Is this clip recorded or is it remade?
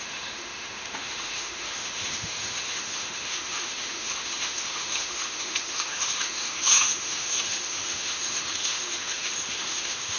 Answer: remade